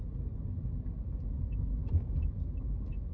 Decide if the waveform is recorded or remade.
recorded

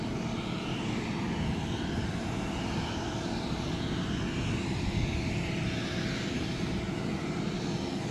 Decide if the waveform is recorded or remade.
recorded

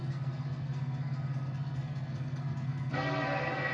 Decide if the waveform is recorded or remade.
remade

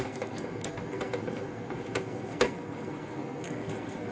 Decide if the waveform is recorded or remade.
remade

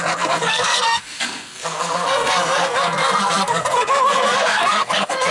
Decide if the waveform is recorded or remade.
remade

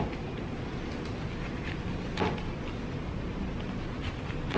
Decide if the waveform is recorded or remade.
recorded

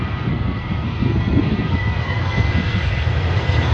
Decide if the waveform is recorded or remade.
remade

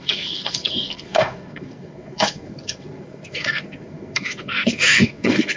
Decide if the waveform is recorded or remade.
remade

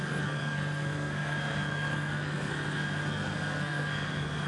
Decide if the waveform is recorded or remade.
remade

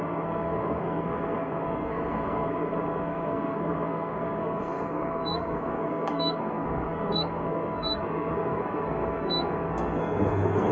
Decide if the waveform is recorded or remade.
remade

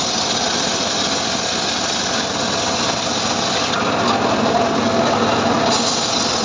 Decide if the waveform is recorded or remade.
recorded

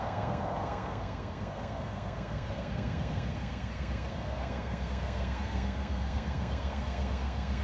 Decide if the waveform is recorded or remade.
remade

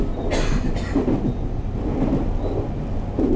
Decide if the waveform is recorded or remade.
recorded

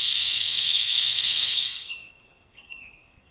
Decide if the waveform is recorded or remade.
remade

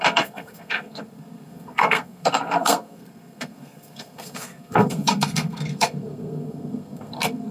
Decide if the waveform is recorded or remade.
remade